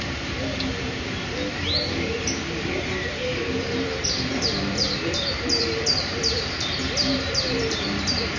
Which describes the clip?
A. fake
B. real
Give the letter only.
A